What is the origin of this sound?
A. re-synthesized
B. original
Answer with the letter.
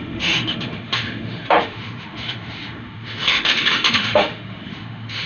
A